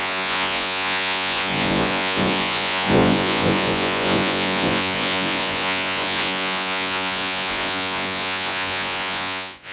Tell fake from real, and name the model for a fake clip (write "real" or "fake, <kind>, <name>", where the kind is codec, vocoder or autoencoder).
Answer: fake, vocoder, Vocos